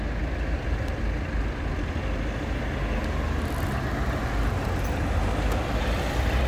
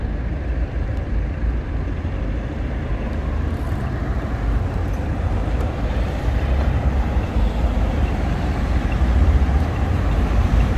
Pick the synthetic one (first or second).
second